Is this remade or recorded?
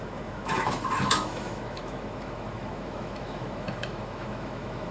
remade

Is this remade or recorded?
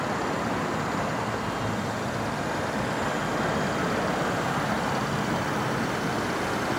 recorded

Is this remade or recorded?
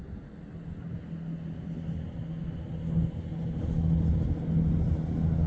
recorded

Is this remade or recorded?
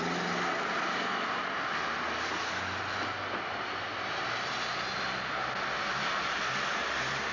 recorded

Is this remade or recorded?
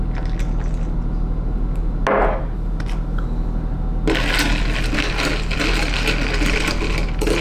recorded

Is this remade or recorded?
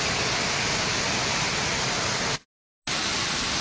recorded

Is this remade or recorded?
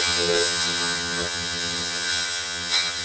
remade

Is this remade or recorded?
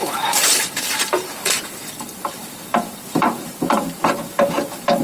remade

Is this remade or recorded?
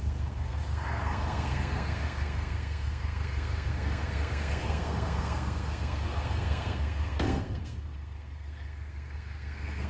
remade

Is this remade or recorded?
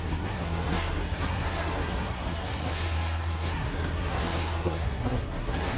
remade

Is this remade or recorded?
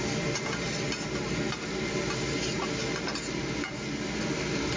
recorded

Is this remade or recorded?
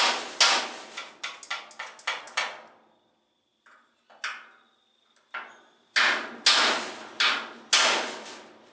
recorded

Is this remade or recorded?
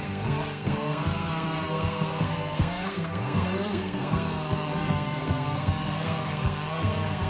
remade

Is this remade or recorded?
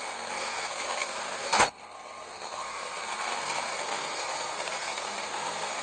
remade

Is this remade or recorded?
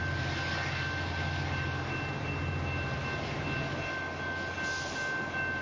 recorded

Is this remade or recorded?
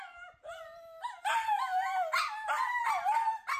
recorded